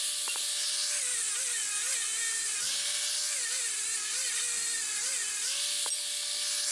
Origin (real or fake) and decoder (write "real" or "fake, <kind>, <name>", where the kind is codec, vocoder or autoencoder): real